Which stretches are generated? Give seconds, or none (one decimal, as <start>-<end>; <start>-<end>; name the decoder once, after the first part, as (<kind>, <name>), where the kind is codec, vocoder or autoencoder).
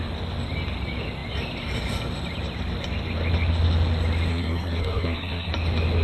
4.3-5.5 (codec, SNAC)